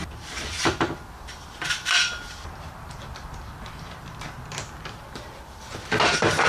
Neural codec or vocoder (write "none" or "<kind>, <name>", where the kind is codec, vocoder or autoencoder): vocoder, BigVGAN v2